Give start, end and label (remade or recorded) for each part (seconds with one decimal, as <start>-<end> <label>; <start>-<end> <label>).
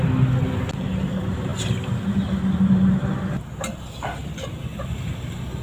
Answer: 0.0-4.7 recorded; 4.7-5.6 remade